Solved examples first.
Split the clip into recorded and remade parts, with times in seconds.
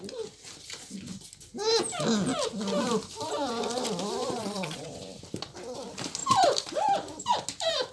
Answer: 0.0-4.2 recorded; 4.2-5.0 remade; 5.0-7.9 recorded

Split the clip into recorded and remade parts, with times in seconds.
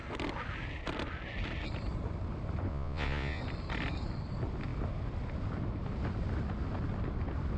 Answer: 0.0-2.7 recorded; 2.7-3.4 remade; 3.4-7.6 recorded